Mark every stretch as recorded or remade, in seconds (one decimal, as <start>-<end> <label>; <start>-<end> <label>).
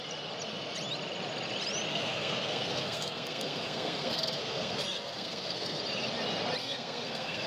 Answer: 0.0-1.9 recorded; 1.9-5.8 remade; 5.8-6.6 recorded; 6.6-7.5 remade